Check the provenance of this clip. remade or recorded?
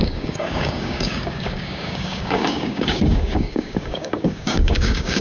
remade